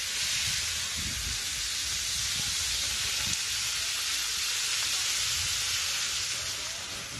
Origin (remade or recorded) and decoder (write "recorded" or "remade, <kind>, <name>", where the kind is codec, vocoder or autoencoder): recorded